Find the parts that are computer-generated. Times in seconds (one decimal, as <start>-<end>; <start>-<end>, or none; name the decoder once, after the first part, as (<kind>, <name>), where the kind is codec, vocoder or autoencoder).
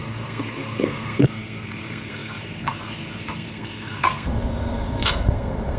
0.0-5.8 (codec, SNAC)